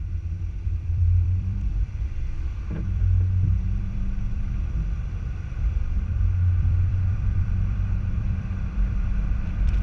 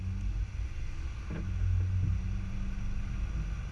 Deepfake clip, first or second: first